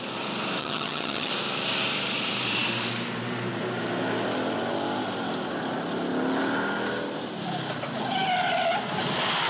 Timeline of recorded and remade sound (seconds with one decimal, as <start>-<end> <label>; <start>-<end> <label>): 0.0-0.6 recorded; 0.6-1.3 remade; 1.3-9.5 recorded